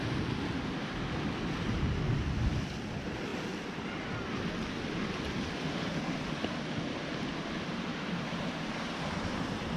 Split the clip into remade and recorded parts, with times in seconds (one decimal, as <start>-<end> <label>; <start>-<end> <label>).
0.0-7.9 recorded; 7.9-9.3 remade; 9.3-9.8 recorded